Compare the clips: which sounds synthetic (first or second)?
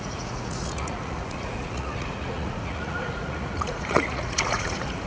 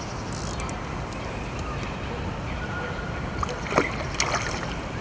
first